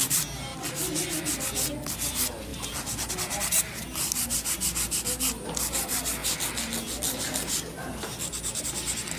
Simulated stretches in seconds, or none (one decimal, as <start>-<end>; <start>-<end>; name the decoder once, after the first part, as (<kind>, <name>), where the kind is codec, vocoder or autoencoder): none